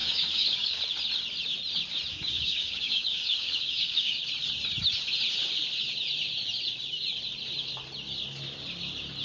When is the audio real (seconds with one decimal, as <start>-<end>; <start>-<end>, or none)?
0.8-2.1; 4.2-9.2